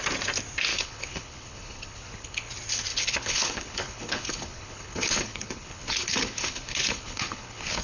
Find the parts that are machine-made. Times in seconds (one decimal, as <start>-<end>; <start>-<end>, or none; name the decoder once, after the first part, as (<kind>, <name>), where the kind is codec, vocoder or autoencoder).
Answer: 0.7-2.5 (codec, HILCodec); 2.9-7.8